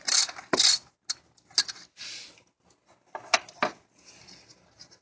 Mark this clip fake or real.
real